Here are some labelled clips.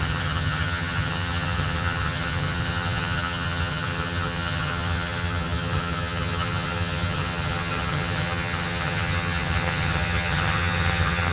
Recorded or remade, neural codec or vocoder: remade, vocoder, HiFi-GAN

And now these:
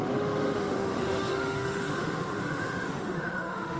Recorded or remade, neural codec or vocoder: remade, autoencoder, DAC-VAE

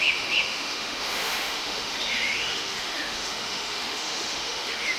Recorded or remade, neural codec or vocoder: remade, autoencoder, DAC-VAE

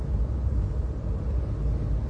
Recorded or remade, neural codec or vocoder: recorded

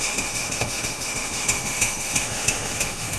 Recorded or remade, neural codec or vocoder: remade, autoencoder, DAC-VAE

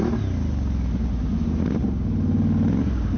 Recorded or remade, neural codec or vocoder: recorded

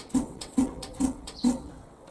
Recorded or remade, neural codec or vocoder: remade, vocoder, WaveNeXt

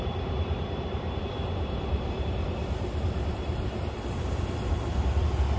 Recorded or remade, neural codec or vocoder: remade, vocoder, BigVGAN v2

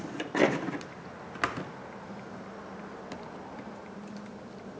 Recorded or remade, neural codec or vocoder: recorded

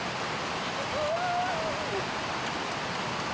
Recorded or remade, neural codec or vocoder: recorded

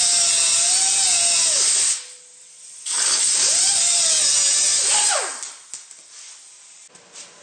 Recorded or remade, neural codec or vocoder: recorded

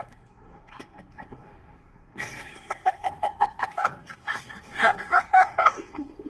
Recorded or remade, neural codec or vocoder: remade, codec, SNAC